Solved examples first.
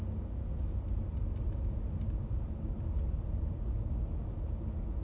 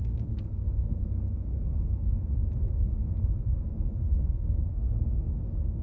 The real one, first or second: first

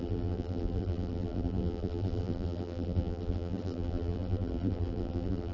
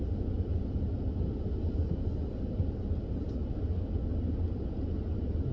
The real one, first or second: second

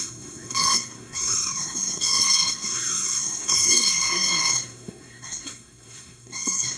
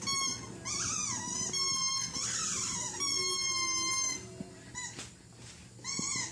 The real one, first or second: second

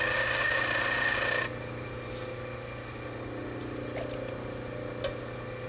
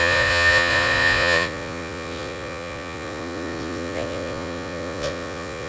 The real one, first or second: first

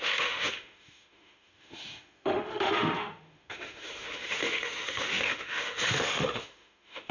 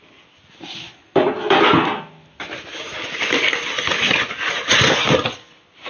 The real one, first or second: second